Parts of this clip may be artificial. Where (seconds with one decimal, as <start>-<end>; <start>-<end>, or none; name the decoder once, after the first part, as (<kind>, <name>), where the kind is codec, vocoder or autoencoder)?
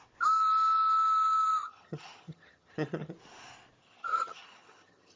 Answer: 1.6-3.1 (vocoder, HiFi-GAN); 3.8-5.2